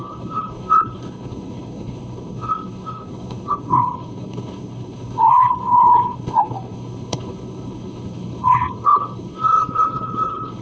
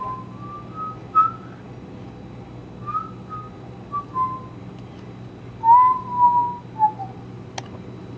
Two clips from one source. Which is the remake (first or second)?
first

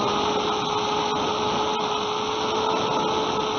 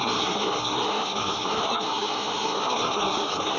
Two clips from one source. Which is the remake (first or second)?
second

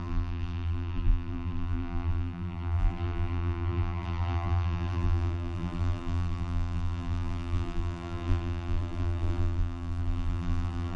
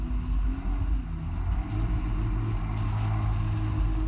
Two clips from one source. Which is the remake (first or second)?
first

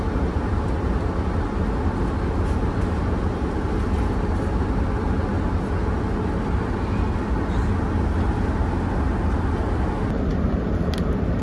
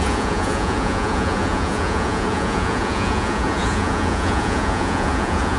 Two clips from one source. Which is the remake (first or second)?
second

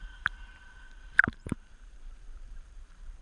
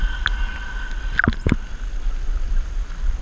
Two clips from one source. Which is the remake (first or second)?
first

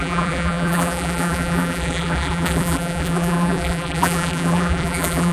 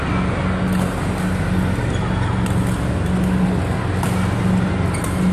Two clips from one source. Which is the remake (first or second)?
first